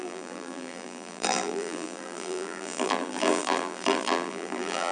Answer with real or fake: fake